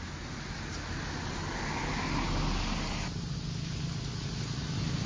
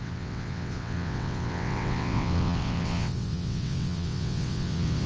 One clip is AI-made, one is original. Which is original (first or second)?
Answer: first